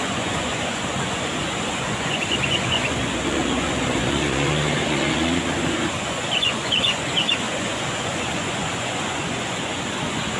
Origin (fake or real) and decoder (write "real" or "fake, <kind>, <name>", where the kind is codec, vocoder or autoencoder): fake, vocoder, Vocos